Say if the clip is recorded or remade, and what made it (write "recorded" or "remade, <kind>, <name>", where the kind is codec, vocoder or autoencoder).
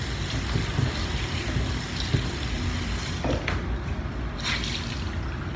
recorded